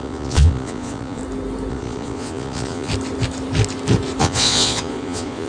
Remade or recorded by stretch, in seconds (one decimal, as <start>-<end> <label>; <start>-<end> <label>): 0.0-1.2 remade; 1.2-1.7 recorded; 1.7-2.9 remade; 2.9-4.2 recorded; 4.2-5.5 remade